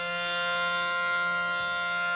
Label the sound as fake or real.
real